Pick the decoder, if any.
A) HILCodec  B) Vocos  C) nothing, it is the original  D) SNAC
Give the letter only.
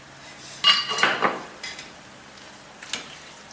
C